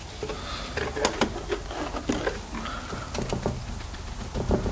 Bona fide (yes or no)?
yes